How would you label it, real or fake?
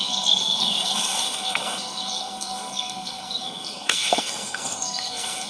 fake